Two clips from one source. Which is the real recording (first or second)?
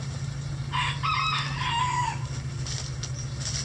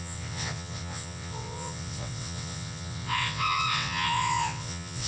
first